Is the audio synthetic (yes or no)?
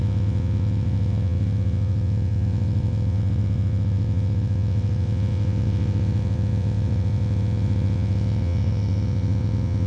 yes